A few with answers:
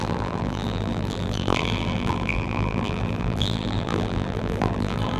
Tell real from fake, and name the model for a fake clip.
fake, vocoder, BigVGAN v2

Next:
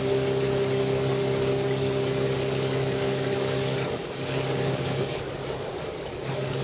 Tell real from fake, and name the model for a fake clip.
fake, codec, DAC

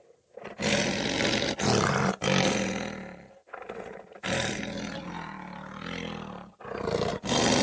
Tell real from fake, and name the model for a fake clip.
real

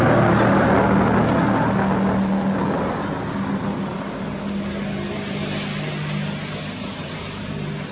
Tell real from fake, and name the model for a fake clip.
real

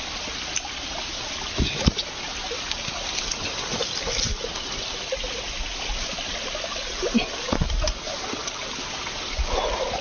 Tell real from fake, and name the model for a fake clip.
real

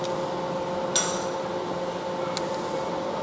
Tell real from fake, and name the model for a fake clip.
real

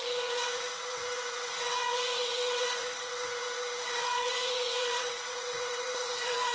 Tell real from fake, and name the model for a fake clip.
fake, vocoder, WaveNeXt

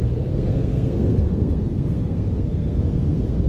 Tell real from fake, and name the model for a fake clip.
fake, codec, SNAC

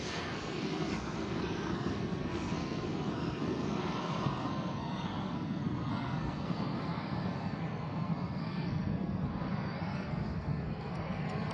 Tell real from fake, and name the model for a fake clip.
fake, codec, SNAC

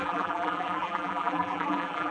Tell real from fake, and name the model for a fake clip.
fake, vocoder, BigVGAN v2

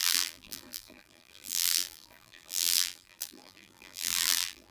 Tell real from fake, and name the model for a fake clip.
fake, vocoder, BigVGAN v2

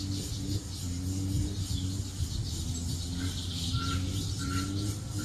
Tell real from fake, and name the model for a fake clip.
real